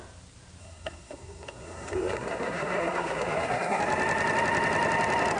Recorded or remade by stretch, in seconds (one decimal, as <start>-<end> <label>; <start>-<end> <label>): 0.0-0.6 recorded; 0.6-3.8 remade; 3.8-5.4 recorded